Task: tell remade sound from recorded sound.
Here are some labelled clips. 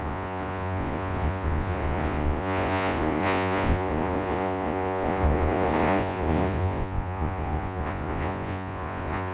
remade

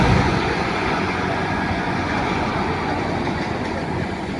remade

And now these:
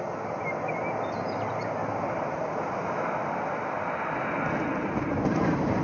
recorded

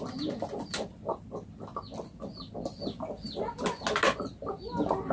recorded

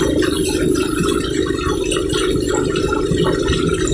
recorded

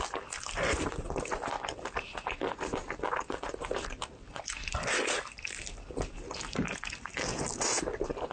recorded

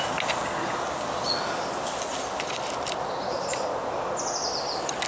recorded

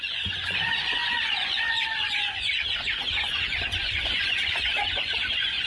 remade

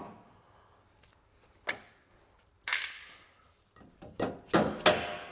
recorded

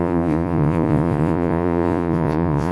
remade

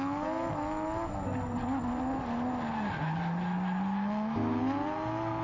recorded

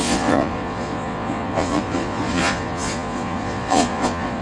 remade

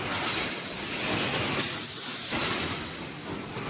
recorded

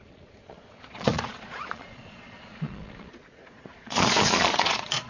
remade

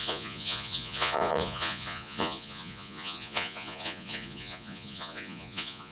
remade